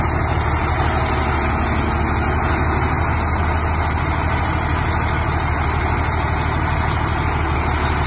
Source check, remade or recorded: recorded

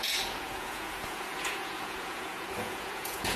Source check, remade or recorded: remade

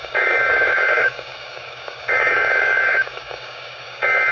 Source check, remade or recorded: remade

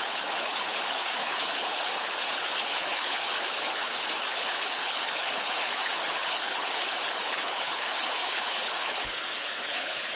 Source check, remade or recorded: remade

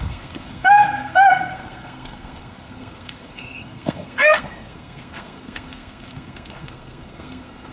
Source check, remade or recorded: remade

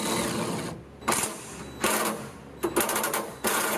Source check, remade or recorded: recorded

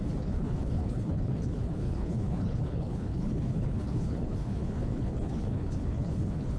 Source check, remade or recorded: remade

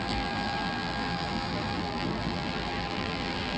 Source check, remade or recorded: remade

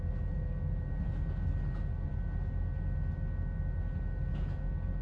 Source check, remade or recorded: recorded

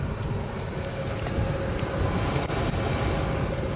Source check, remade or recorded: recorded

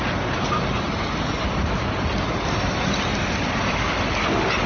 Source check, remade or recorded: recorded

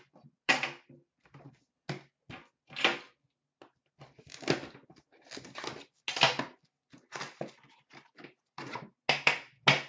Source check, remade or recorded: recorded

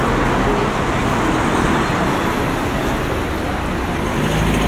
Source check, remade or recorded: recorded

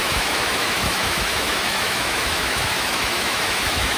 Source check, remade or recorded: remade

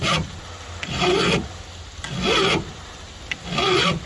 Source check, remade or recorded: recorded